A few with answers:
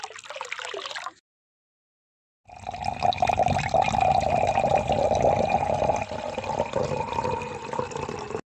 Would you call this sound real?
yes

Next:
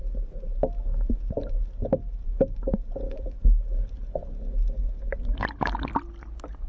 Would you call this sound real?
yes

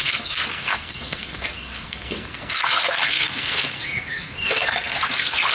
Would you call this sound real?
no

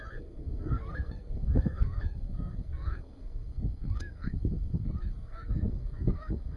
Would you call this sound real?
no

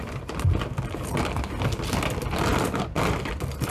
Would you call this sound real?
yes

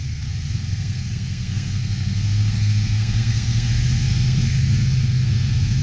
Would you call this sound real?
no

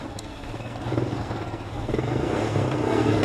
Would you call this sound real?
no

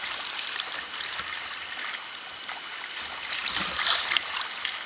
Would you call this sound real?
yes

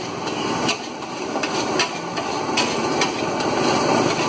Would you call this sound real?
yes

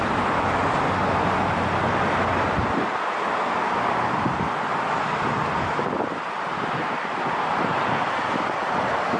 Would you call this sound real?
yes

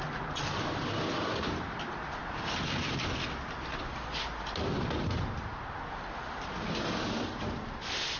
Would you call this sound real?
yes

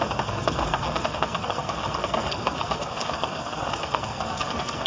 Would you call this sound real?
no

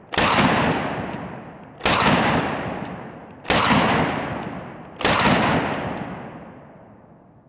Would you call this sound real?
yes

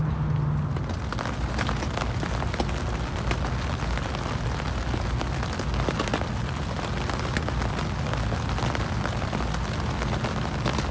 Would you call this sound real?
yes